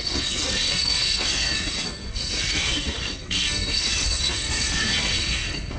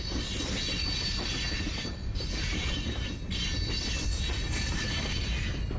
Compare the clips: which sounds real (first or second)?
second